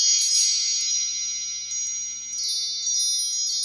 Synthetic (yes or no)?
no